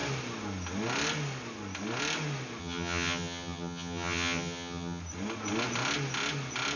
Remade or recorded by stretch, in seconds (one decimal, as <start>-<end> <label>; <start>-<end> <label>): 0.0-2.6 recorded; 2.6-5.0 remade; 5.0-6.8 recorded

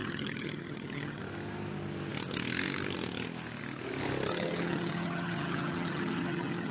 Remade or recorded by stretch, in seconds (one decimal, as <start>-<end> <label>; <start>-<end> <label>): 0.0-1.2 remade; 1.2-4.3 recorded; 4.3-6.7 remade

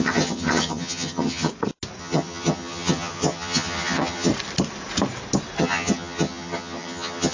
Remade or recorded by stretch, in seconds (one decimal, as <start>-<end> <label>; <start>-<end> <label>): 0.0-1.5 remade; 1.5-2.0 recorded; 2.0-4.3 remade; 4.3-5.6 recorded; 5.6-7.3 remade

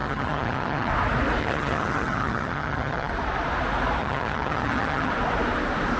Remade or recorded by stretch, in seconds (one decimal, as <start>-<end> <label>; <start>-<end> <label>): 0.0-0.9 remade; 0.9-1.4 recorded; 1.4-3.1 remade; 3.1-4.0 recorded; 4.0-5.1 remade; 5.1-6.0 recorded